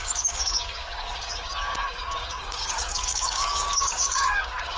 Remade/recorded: remade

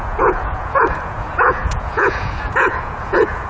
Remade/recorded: remade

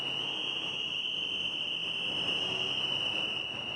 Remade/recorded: recorded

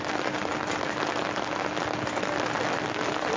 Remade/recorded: recorded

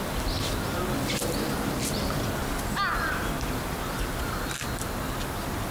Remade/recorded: recorded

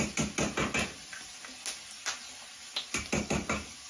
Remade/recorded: recorded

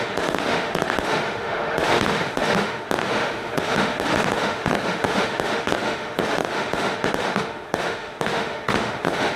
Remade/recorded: remade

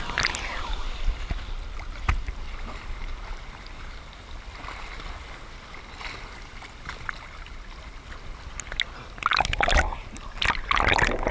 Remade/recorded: recorded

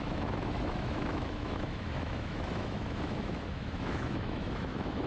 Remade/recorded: remade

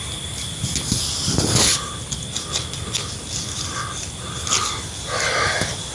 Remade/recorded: recorded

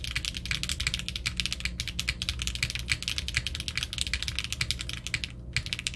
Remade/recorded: recorded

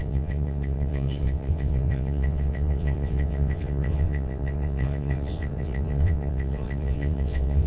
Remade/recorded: remade